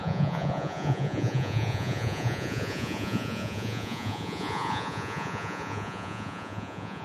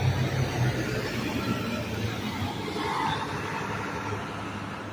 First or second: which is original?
second